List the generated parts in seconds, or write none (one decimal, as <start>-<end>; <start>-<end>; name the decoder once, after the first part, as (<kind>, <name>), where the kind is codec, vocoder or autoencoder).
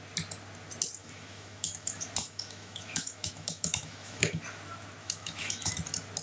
1.0-4.4 (autoencoder, DAC-VAE); 5.0-5.7